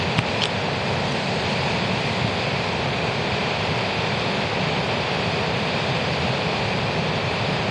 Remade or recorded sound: recorded